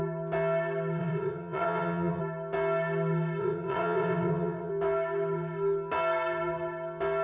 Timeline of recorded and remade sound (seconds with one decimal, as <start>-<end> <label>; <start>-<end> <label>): 0.0-1.0 recorded; 1.0-2.2 remade; 2.2-3.4 recorded; 3.4-4.7 remade; 4.7-7.2 recorded